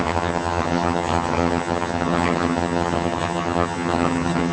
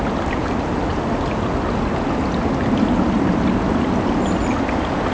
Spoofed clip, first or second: first